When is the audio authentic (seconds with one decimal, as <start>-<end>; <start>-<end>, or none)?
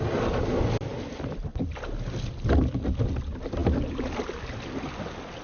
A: 0.0-5.4